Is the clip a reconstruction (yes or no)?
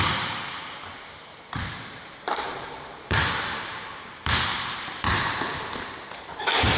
yes